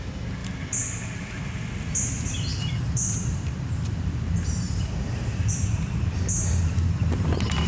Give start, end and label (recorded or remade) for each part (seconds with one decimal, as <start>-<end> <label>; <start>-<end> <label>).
0.0-0.4 recorded; 0.4-1.5 remade; 1.5-2.5 recorded; 2.5-6.4 remade; 6.4-7.7 recorded